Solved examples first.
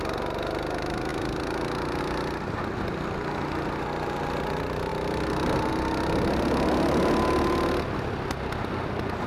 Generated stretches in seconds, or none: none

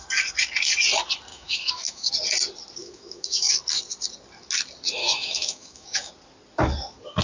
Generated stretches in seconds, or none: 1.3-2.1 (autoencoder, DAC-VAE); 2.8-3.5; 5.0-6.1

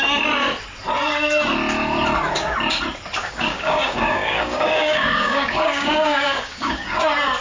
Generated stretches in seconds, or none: 3.2-7.0 (codec, DAC)